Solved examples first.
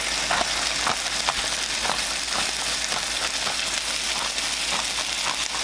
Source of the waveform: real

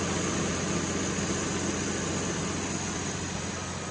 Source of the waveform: real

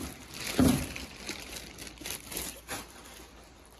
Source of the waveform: fake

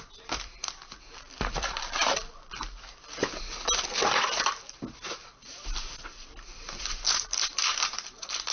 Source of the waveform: fake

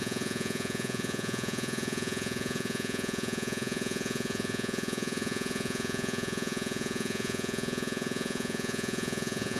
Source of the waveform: fake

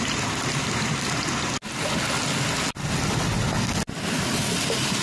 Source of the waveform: real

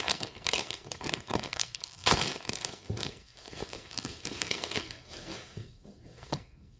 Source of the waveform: fake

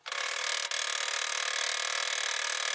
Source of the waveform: real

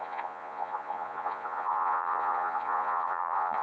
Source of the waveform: fake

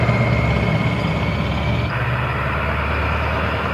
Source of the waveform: real